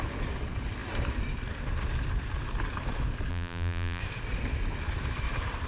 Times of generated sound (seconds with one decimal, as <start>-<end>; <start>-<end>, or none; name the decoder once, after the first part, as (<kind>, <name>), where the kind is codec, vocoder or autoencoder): 3.3-4.0 (vocoder, BigVGAN v2)